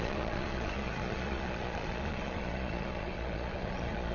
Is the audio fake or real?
fake